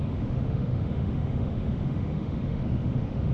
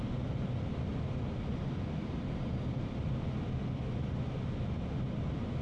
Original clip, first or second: second